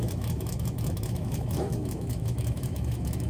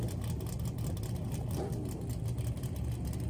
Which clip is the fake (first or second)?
first